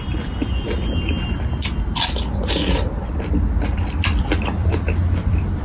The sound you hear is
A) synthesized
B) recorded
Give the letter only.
A